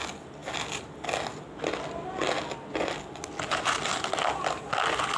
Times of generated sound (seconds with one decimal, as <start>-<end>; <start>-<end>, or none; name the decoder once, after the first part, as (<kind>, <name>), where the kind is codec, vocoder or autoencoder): none